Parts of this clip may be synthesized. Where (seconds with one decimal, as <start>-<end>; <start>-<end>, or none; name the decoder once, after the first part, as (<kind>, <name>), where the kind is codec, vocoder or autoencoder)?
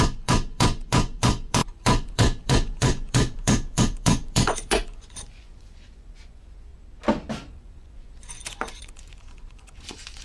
0.0-6.7 (vocoder, Vocos); 7.5-10.2